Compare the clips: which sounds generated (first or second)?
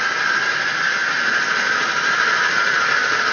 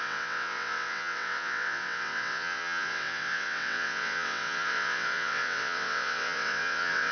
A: second